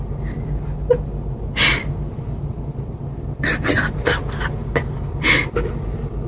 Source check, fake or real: real